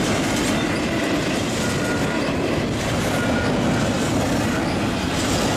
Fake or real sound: real